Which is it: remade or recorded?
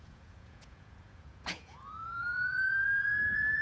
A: remade